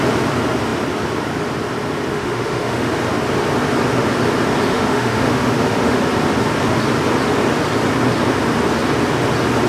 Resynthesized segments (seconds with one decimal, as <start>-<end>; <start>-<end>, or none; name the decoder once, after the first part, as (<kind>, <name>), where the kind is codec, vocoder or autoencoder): 2.1-2.9 (autoencoder, DAC-VAE); 4.7-6.0

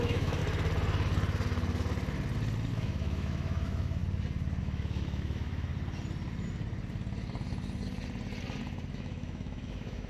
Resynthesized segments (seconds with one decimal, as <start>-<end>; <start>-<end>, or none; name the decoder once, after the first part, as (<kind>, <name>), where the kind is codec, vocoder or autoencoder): 0.0-0.4 (autoencoder, DAC-VAE); 2.7-4.0; 4.6-5.7; 8.9-10.1